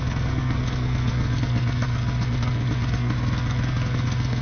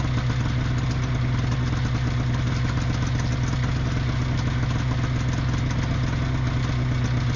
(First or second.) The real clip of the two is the second